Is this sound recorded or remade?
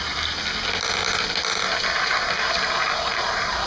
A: recorded